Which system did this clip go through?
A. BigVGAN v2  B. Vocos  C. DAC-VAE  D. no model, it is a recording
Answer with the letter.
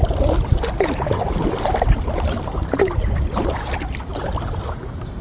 D